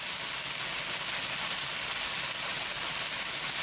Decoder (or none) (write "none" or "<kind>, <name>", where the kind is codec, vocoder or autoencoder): none